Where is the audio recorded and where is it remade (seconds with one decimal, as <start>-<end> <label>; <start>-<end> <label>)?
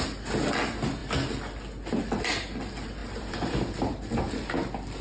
0.0-3.0 recorded; 3.0-4.2 remade; 4.2-5.0 recorded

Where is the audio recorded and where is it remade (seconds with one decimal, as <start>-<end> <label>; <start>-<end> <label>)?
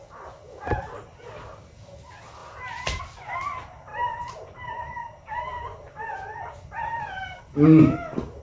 0.0-3.9 recorded; 3.9-7.4 remade; 7.4-8.4 recorded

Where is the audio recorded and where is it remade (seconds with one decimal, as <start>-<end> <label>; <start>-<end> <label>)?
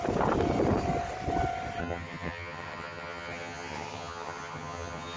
0.0-1.8 recorded; 1.8-5.2 remade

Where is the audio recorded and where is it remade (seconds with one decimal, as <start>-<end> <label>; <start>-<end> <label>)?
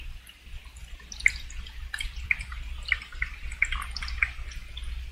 0.0-0.8 remade; 0.8-1.7 recorded; 1.7-2.5 remade; 2.5-5.1 recorded